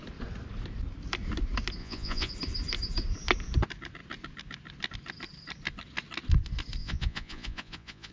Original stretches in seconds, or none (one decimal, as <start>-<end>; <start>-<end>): 0.0-1.8; 2.3-6.8